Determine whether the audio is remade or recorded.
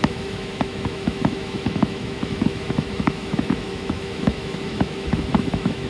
remade